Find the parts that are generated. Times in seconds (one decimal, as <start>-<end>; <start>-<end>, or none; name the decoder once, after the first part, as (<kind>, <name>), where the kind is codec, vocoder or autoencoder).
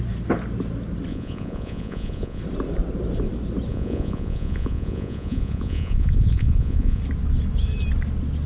1.1-2.4 (vocoder, Vocos); 3.7-7.0